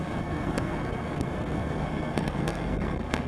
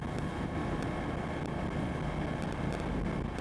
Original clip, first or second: second